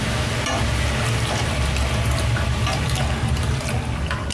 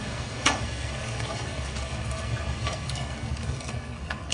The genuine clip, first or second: first